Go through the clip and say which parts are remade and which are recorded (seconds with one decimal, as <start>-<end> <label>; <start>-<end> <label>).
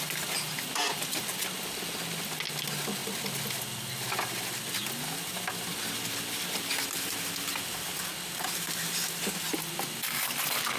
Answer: 0.0-10.8 recorded